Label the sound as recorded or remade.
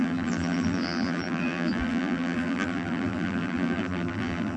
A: remade